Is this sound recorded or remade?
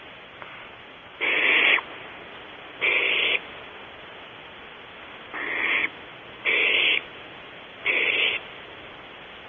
recorded